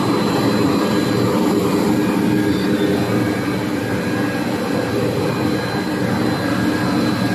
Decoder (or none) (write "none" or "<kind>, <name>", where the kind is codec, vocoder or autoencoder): none